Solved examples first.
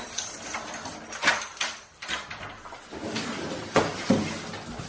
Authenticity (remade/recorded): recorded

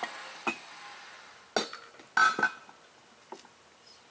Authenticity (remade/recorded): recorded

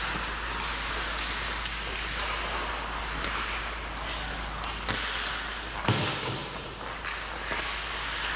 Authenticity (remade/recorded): recorded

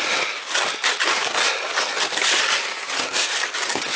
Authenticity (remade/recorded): recorded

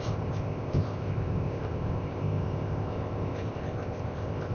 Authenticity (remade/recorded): remade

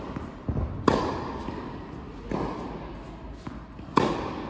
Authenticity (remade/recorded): recorded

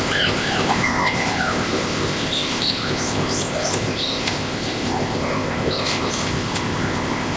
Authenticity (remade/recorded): remade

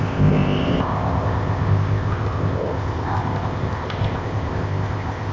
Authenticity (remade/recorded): remade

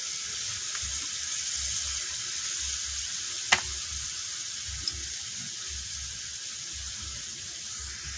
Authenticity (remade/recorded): recorded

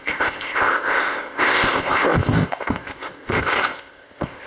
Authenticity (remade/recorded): remade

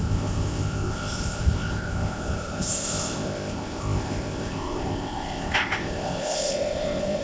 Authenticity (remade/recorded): remade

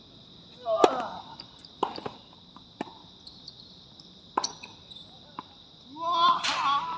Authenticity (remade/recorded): recorded